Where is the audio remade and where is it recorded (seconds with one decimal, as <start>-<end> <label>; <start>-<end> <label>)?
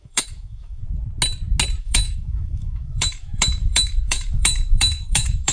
0.0-0.8 remade; 0.8-1.8 recorded; 1.8-5.5 remade